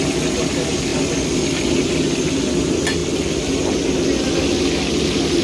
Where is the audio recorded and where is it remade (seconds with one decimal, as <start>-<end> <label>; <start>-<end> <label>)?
0.0-5.4 recorded